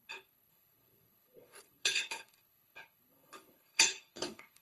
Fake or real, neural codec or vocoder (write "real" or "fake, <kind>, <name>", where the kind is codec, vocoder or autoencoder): fake, codec, HILCodec